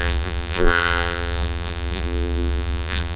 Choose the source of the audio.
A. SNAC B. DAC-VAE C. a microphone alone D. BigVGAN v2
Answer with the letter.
D